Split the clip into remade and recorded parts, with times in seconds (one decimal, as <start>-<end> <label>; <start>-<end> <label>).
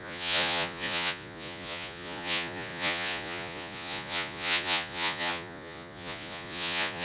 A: 0.0-7.0 remade